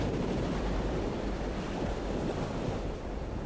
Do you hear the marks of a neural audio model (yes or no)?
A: yes